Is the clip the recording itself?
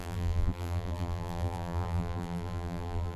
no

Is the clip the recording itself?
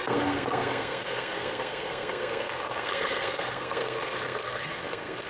no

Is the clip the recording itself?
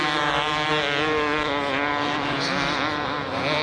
yes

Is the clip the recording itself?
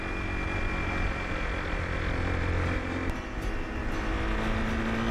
yes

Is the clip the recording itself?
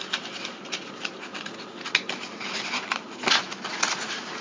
yes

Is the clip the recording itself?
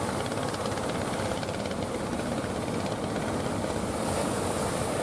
yes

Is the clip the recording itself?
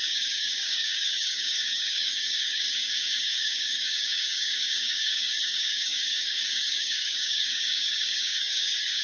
no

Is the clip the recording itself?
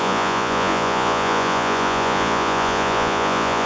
no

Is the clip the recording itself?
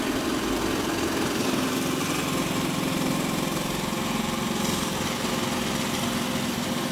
yes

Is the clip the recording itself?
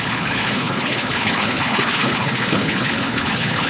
no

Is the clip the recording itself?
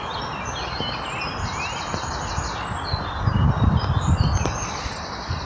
yes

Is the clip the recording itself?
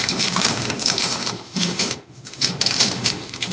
no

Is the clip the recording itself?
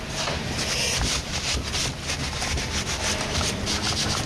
yes